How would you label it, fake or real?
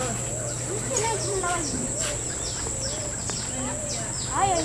real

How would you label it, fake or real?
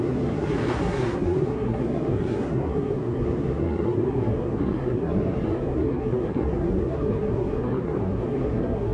fake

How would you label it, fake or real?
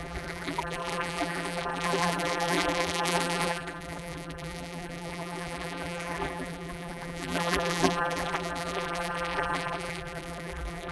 fake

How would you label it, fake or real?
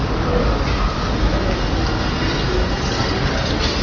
real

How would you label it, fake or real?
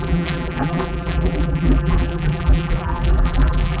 fake